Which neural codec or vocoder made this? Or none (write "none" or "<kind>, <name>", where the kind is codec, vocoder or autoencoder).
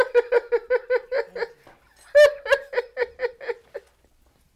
none